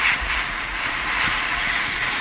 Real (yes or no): no